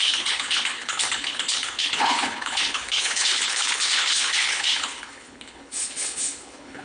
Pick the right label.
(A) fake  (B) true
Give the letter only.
A